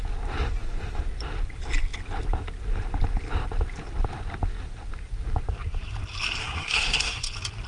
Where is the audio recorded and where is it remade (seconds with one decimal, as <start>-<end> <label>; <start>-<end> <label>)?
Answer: 0.0-6.4 recorded; 6.4-7.2 remade; 7.2-7.7 recorded